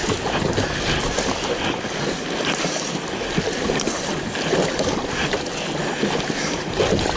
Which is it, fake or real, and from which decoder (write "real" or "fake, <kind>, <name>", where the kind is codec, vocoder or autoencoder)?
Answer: real